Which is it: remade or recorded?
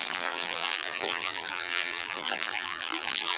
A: remade